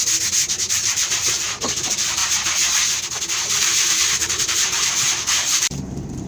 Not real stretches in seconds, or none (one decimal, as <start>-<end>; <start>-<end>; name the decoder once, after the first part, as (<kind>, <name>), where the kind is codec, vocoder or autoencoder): 0.7-2.2 (vocoder, BigVGAN v2); 3.6-6.3

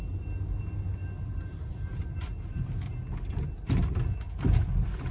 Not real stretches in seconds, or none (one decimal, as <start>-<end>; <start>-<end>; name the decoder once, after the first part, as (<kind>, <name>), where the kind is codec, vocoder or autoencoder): 1.0-3.7 (vocoder, BigVGAN v2)

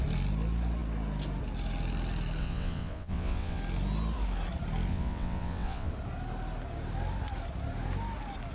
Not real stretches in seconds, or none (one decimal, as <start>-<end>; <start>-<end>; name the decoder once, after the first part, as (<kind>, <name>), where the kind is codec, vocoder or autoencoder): 2.4-3.6 (vocoder, WaveNeXt); 4.9-5.9

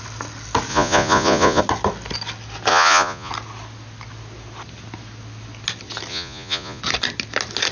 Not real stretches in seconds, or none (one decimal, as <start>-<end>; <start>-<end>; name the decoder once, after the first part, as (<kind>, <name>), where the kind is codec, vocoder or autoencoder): 0.7-1.6 (vocoder, Vocos); 2.7-3.3; 6.1-6.8

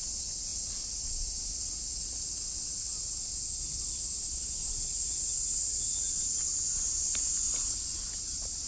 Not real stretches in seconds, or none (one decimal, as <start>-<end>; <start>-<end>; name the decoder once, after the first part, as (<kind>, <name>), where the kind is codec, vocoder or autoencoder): none